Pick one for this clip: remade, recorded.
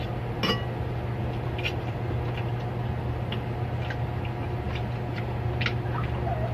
recorded